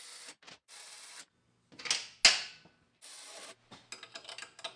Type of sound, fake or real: real